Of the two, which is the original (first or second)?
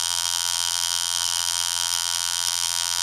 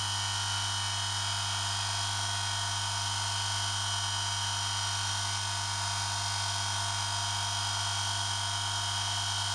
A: second